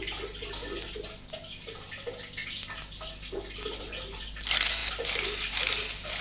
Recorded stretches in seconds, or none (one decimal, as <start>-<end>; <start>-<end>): 0.0-6.2